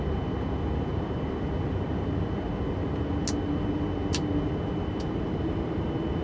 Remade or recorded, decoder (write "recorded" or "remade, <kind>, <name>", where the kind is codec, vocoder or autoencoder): recorded